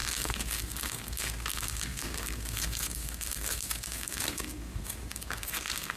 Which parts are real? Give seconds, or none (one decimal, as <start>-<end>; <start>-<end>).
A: none